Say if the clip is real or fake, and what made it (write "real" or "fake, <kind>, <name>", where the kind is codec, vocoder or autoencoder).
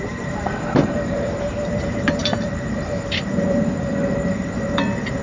fake, vocoder, BigVGAN v2